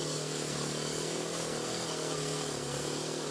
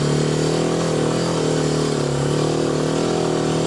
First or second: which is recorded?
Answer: second